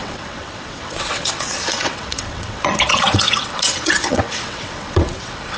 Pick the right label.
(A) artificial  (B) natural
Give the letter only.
A